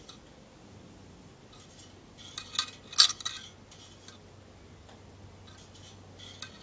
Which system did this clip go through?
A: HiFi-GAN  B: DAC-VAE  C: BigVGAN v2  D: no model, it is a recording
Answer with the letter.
D